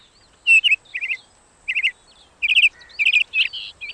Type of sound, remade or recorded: recorded